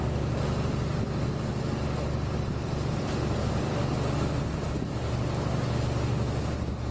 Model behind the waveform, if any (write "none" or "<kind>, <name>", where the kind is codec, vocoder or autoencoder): none